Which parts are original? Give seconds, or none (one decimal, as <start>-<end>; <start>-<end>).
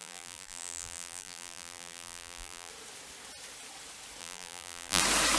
2.7-4.2; 5.0-5.4